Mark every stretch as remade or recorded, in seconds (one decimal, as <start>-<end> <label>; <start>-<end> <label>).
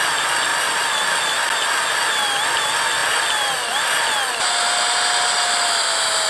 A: 0.0-6.3 recorded